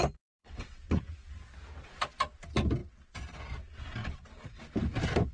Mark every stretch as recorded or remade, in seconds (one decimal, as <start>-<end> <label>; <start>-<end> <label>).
0.0-0.4 recorded; 0.4-1.0 remade; 1.0-4.0 recorded; 4.0-4.6 remade; 4.6-5.3 recorded